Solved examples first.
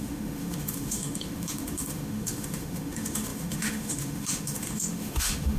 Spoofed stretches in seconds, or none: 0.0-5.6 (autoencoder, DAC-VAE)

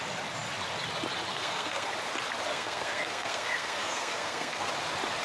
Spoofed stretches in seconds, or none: 1.3-1.9 (codec, SNAC); 2.5-4.7